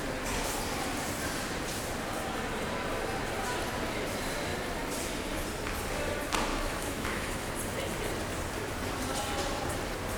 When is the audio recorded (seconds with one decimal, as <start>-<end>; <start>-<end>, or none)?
0.0-6.5; 7.5-10.2